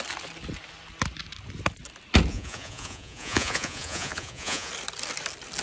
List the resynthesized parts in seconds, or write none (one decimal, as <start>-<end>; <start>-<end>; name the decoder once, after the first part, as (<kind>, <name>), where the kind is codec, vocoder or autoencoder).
2.3-4.7 (vocoder, Vocos)